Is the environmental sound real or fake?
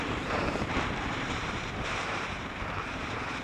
fake